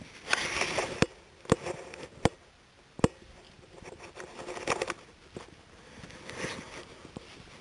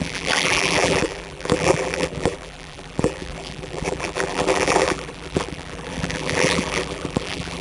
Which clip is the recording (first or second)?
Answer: first